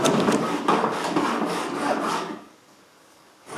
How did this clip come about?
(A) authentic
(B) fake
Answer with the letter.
B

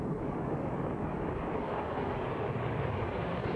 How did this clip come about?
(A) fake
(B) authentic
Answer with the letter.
A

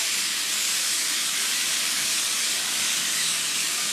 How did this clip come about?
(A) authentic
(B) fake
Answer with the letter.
B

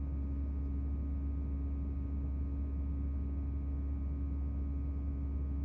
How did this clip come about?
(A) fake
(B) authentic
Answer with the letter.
B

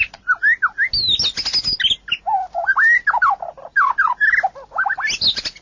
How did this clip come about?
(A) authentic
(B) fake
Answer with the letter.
A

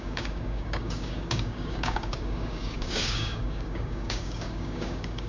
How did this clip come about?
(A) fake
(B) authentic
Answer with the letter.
A